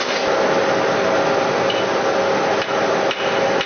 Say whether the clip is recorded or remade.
recorded